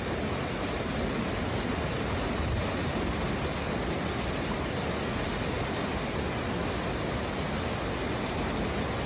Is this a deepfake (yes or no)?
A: no